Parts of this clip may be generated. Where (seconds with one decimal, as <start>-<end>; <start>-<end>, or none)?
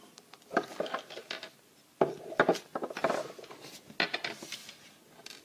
none